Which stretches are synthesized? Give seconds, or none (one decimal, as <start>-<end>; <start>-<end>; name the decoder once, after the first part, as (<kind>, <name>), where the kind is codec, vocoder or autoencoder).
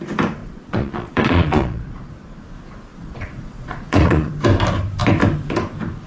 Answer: 0.4-2.1 (vocoder, Vocos); 2.9-4.3